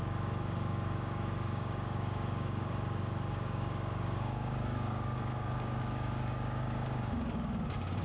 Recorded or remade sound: remade